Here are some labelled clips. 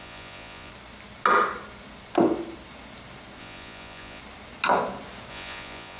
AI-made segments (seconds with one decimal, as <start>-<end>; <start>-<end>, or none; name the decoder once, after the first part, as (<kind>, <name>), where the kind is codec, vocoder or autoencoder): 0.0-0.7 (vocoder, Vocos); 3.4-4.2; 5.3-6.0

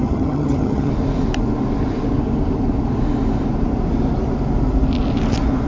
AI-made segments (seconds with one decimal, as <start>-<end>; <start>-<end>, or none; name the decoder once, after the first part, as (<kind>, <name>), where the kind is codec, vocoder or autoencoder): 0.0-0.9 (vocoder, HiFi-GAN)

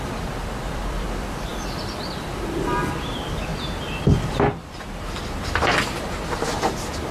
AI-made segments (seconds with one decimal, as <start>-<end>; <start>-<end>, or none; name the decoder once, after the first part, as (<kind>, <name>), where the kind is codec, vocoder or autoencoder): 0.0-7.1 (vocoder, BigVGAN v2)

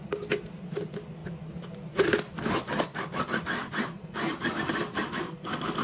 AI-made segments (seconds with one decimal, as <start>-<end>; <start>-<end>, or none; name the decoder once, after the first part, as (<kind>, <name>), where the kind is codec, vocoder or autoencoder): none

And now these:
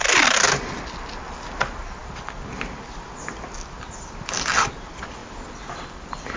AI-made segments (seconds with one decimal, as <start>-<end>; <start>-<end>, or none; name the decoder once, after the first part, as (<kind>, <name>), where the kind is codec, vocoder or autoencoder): none

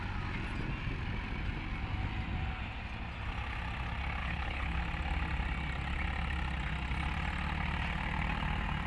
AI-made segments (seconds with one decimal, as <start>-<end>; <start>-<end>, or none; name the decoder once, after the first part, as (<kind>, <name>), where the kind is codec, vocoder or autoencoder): 4.2-4.8 (codec, HILCodec)